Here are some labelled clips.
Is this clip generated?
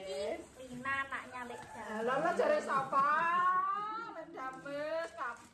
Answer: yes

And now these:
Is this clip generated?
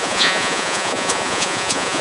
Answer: yes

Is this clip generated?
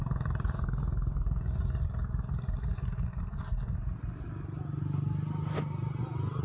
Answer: no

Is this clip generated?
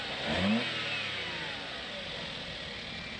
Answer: no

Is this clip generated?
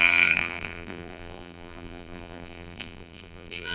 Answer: yes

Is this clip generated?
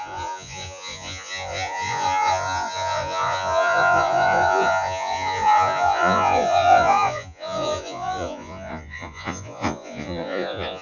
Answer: yes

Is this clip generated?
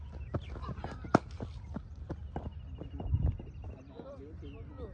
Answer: no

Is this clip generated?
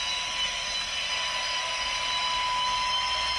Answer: no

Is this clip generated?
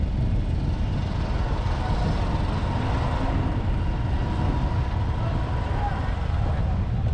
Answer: no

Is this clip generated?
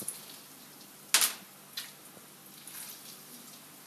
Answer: no